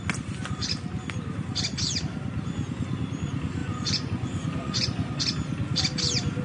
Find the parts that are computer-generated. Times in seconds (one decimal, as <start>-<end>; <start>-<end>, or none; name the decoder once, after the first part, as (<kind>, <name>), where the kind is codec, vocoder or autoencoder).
3.6-5.2 (vocoder, Vocos)